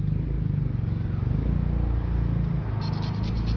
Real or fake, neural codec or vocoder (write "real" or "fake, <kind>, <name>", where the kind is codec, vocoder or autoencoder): real